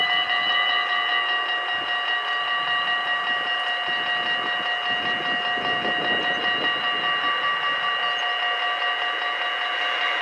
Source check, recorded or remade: recorded